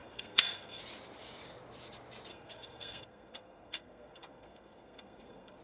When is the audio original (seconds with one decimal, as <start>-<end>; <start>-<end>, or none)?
0.8-2.3